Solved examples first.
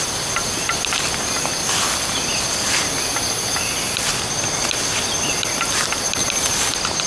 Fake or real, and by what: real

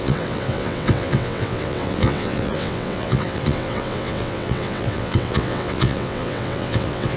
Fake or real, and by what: fake, vocoder, WaveNeXt